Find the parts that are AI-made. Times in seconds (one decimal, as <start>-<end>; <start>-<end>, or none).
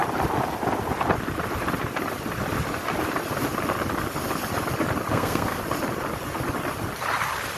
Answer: 5.1-5.6